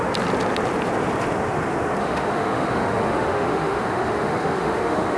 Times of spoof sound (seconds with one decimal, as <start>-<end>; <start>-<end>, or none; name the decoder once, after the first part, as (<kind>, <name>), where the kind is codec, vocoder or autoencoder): 2.0-5.2 (autoencoder, DAC-VAE)